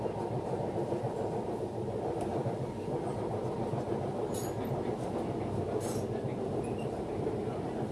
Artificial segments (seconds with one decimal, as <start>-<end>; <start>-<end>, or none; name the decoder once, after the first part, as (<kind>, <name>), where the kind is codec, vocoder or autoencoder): none